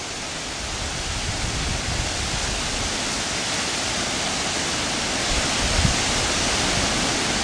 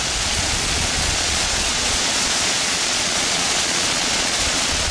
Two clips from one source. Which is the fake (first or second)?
second